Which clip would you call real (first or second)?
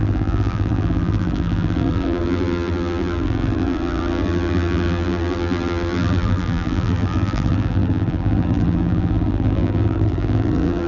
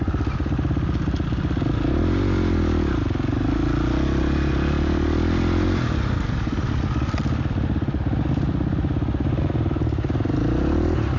second